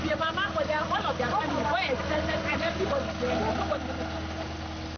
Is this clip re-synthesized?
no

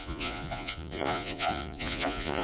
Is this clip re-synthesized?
yes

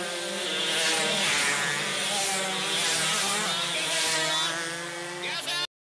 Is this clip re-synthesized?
no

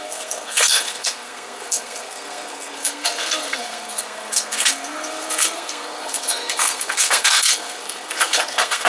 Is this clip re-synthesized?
yes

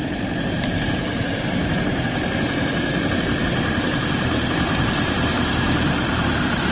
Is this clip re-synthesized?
yes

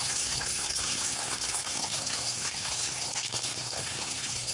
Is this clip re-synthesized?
yes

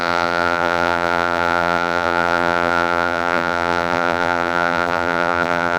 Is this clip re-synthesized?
yes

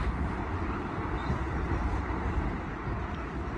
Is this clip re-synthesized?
no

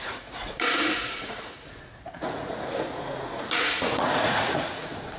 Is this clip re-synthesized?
yes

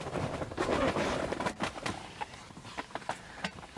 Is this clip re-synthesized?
yes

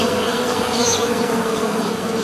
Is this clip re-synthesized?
yes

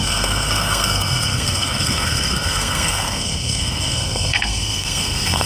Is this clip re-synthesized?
yes